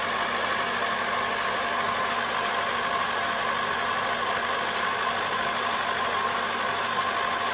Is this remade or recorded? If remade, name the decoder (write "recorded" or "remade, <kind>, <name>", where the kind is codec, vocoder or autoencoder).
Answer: recorded